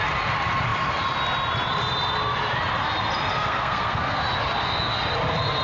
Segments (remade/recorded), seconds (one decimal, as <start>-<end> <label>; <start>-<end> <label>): 0.0-3.3 recorded; 3.3-4.2 remade; 4.2-5.6 recorded